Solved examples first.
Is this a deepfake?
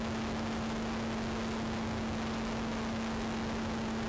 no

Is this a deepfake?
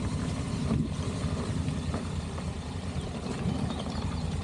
yes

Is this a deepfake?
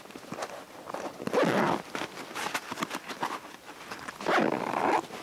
no